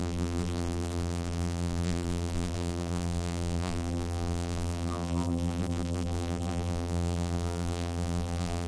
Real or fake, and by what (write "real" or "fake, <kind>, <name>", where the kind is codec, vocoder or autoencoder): fake, vocoder, BigVGAN v2